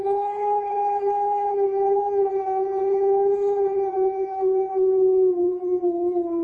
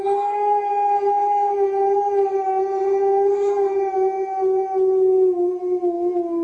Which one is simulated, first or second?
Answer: first